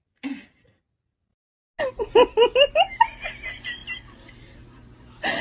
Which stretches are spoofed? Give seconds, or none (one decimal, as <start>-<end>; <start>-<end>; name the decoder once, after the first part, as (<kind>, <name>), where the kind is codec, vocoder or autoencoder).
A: none